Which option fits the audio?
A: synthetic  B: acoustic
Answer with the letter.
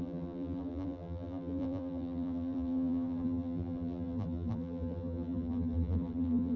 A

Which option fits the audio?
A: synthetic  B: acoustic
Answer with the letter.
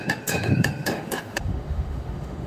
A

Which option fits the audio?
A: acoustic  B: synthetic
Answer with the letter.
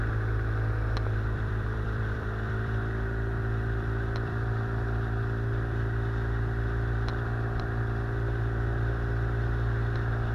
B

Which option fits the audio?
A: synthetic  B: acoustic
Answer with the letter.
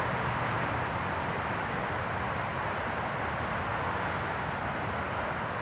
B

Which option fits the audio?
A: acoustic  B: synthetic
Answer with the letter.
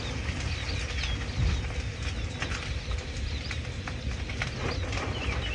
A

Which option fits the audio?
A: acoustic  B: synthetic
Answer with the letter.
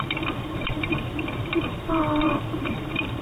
B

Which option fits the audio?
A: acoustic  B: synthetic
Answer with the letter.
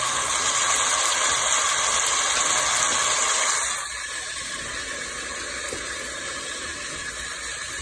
A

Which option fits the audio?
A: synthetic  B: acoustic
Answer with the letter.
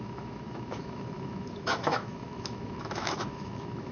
A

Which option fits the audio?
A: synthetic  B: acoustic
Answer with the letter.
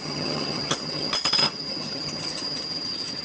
A